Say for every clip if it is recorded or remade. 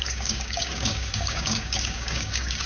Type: remade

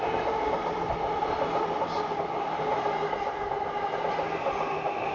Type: recorded